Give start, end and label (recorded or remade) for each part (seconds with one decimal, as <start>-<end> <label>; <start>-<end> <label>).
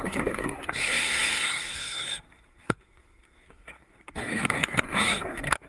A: 0.0-5.7 remade